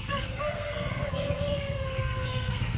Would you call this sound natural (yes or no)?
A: no